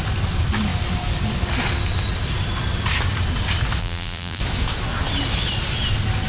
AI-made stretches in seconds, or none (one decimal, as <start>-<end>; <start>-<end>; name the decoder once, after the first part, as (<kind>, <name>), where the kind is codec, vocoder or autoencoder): 3.8-4.4 (vocoder, BigVGAN v2)